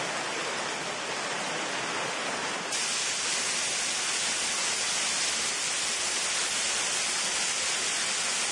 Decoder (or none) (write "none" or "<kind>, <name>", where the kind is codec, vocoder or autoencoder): none